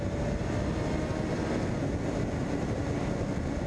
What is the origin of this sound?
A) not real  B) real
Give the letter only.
B